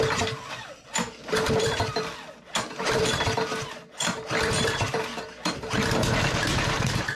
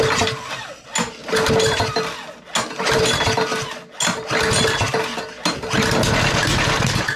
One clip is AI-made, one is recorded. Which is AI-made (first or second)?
first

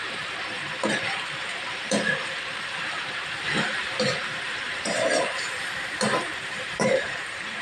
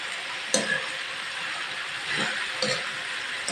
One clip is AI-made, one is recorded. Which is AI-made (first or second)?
first